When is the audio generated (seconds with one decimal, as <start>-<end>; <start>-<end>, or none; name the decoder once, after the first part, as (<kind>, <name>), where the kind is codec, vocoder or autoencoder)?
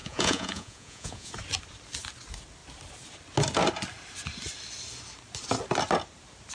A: 0.0-1.3 (vocoder, Vocos)